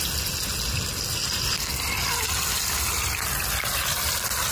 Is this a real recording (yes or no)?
yes